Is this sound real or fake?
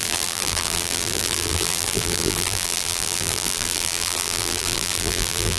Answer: fake